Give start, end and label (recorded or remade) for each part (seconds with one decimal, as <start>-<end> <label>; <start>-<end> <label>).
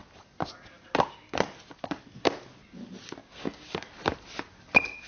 0.0-3.2 recorded; 3.2-3.7 remade; 3.7-5.1 recorded